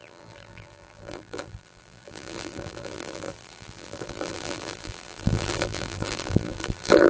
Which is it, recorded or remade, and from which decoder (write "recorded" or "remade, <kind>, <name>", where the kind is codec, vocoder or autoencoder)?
remade, vocoder, BigVGAN v2